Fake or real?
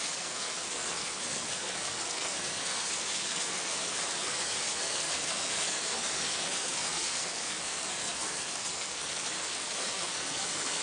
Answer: fake